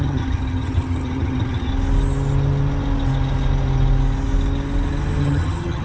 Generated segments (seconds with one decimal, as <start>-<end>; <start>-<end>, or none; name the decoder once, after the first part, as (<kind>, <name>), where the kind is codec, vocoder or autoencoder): 0.0-1.7 (vocoder, HiFi-GAN); 5.2-5.8